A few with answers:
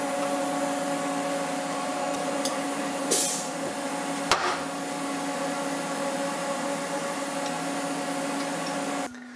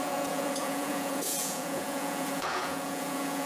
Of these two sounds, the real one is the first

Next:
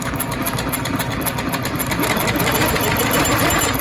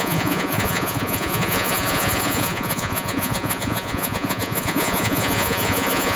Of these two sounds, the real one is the first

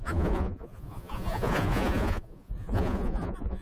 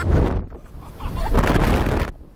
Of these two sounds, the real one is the second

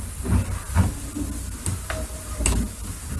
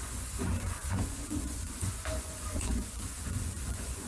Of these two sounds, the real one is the first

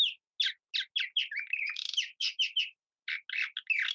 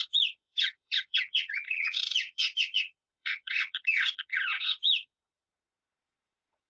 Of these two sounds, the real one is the first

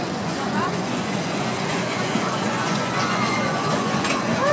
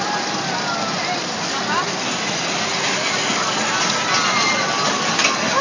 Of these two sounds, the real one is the second